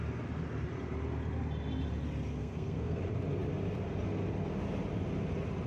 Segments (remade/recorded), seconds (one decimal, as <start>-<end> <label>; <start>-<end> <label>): 0.0-2.4 recorded; 2.4-3.0 remade; 3.0-5.7 recorded